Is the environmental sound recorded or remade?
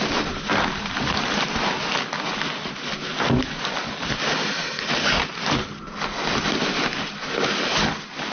recorded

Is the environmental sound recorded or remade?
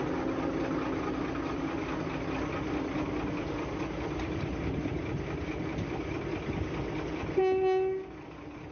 recorded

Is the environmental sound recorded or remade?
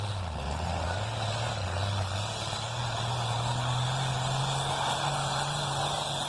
recorded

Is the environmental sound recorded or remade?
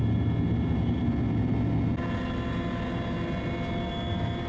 recorded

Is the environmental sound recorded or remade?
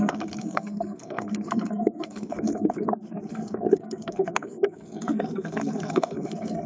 remade